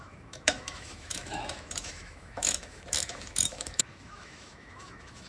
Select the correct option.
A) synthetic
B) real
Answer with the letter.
A